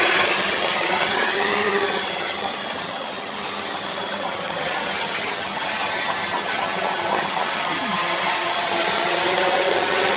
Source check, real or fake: fake